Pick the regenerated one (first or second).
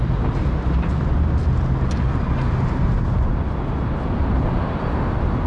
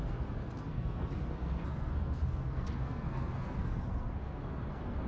second